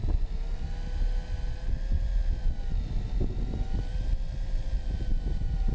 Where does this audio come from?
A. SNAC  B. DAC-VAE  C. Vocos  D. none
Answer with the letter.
D